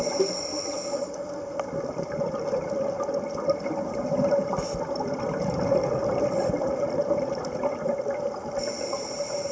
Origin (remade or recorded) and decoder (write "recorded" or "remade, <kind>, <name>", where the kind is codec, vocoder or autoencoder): recorded